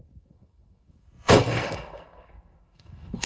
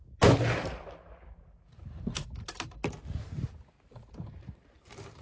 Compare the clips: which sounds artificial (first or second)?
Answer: first